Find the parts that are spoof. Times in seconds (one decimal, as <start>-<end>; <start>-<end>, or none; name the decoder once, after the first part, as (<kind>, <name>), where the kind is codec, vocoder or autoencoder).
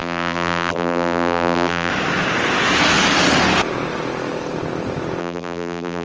0.0-1.9 (vocoder, BigVGAN v2); 5.2-6.0